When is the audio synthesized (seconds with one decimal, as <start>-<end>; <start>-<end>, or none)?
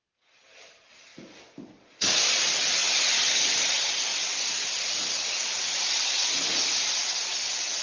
1.1-2.3; 4.1-5.7